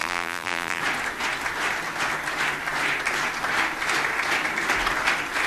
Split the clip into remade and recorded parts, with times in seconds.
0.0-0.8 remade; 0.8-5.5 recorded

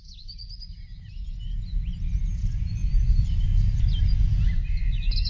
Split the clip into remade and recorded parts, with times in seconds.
0.0-5.3 recorded